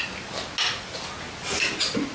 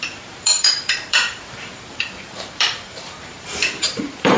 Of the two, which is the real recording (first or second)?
first